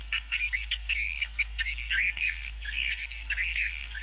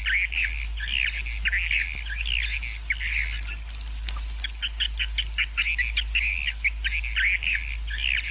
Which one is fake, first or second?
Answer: first